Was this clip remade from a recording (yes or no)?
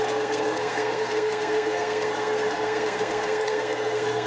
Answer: yes